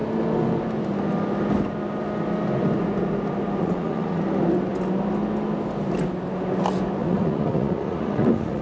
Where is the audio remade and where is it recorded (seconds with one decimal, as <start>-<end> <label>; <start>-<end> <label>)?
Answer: 0.0-3.6 recorded; 3.6-4.2 remade; 4.2-7.0 recorded; 7.0-8.6 remade